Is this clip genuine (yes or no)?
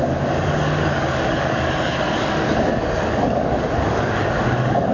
no